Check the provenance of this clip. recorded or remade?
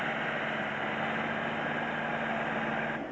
recorded